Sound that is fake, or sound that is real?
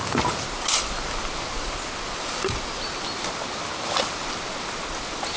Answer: real